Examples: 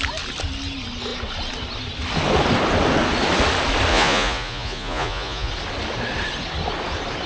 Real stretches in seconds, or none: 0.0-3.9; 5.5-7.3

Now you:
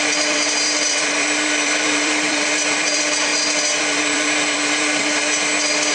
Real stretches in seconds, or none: 3.3-3.8; 5.2-5.9

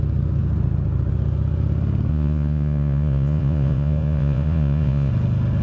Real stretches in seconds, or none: 0.0-2.1; 5.1-5.6

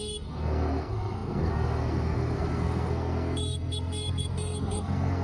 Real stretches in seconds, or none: none

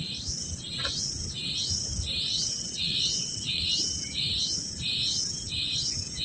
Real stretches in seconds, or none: 0.0-2.3; 3.7-6.2

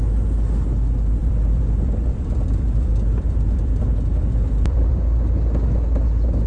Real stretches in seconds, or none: 0.0-1.2; 3.8-4.2; 5.0-6.5

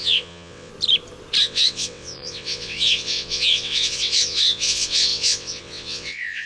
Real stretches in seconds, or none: 0.7-1.4

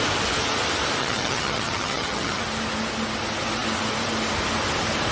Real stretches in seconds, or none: 0.0-1.0; 2.4-5.1